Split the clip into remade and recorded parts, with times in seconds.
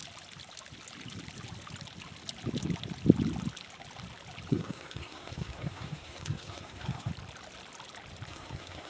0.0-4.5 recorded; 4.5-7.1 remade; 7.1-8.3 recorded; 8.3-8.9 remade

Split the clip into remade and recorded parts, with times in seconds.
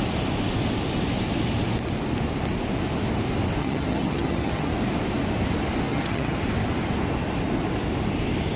0.0-3.6 recorded; 3.6-4.7 remade; 4.7-5.9 recorded; 5.9-6.4 remade; 6.4-8.6 recorded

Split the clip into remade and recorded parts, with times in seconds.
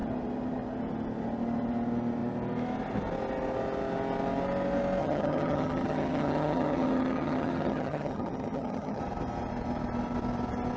0.0-5.0 recorded; 5.0-9.0 remade; 9.0-10.8 recorded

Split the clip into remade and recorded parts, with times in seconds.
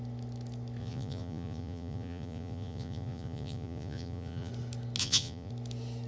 0.0-0.8 recorded; 0.8-4.5 remade; 4.5-5.0 recorded; 5.0-5.5 remade; 5.5-6.1 recorded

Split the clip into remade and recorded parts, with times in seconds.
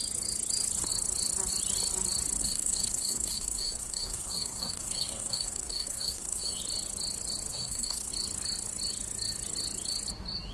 0.0-2.4 recorded; 2.4-6.6 remade; 6.6-7.5 recorded; 7.5-8.1 remade; 8.1-10.5 recorded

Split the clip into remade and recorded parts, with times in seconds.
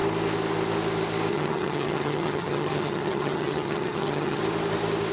0.0-1.3 recorded; 1.3-4.4 remade; 4.4-5.1 recorded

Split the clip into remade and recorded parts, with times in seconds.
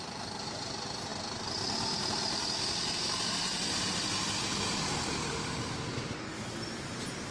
0.0-7.3 recorded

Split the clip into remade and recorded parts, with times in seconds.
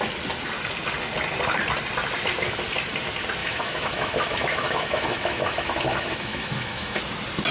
0.0-3.4 recorded; 3.4-7.0 remade; 7.0-7.5 recorded